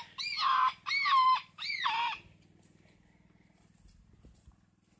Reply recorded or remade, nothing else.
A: recorded